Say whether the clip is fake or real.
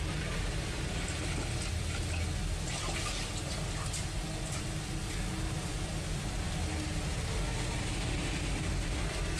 real